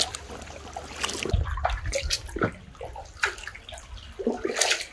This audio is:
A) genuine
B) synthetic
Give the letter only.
A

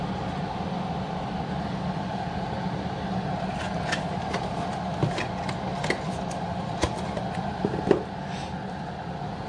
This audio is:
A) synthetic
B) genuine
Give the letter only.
B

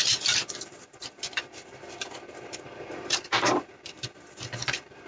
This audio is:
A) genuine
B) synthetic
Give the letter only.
B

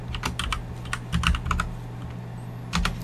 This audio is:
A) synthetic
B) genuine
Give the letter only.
B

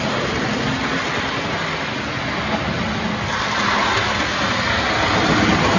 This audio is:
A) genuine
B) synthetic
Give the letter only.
A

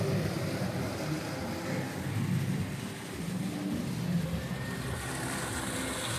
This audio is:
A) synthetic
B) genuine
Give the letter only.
B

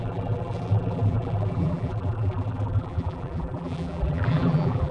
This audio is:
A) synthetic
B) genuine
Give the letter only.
A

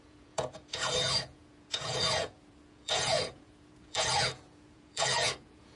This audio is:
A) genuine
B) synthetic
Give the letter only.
B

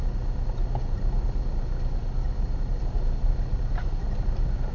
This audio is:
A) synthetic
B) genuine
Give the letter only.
B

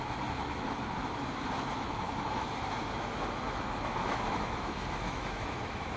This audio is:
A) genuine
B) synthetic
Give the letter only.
B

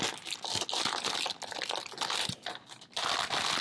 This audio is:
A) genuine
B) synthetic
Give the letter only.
A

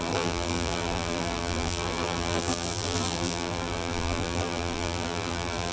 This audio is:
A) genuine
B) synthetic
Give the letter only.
B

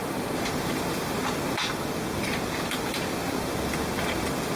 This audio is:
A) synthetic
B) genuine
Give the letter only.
A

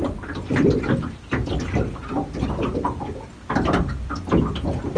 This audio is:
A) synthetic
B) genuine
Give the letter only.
B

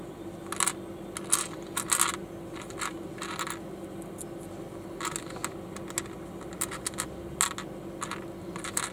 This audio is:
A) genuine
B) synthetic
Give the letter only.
A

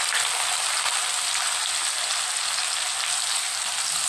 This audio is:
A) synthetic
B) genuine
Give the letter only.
B